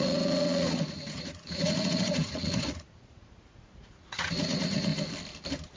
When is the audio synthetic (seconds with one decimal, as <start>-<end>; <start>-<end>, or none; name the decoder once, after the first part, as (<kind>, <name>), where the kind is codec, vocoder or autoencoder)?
0.0-4.9 (vocoder, Vocos)